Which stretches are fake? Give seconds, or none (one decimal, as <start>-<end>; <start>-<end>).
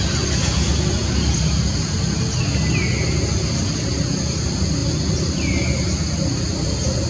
none